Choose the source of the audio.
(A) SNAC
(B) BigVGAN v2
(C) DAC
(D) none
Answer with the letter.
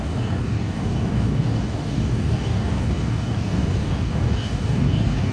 C